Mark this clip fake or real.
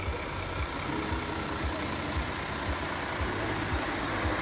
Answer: real